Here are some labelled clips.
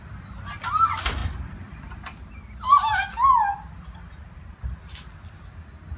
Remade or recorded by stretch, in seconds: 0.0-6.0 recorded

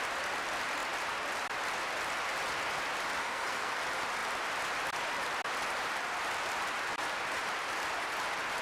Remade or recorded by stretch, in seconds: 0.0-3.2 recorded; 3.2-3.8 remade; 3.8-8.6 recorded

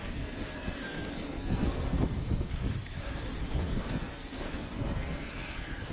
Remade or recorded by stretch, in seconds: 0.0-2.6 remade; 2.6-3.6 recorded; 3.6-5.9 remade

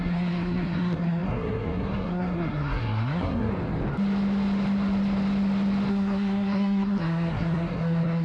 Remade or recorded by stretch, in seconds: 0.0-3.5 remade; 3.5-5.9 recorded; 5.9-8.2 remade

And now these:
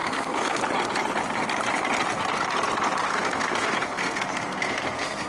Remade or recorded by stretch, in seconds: 0.0-0.6 remade; 0.6-3.1 recorded; 3.1-5.3 remade